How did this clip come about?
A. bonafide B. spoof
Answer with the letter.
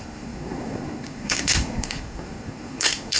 B